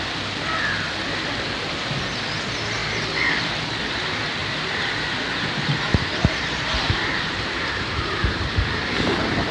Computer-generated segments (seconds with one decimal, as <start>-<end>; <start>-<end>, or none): 4.4-9.5